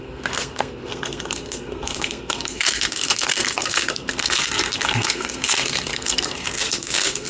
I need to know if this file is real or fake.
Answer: fake